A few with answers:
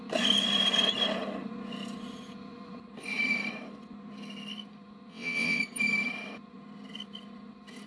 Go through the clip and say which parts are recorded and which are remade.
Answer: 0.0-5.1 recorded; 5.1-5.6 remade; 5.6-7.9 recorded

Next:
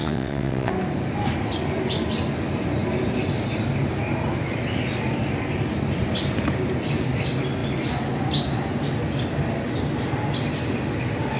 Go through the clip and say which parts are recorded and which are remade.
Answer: 0.0-0.7 remade; 0.7-11.4 recorded

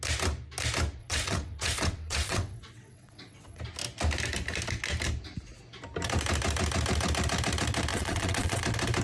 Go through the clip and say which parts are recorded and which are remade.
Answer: 0.0-1.0 recorded; 1.0-3.6 remade; 3.6-7.9 recorded; 7.9-8.6 remade; 8.6-9.0 recorded